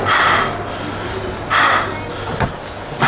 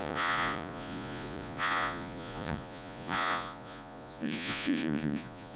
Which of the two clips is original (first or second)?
first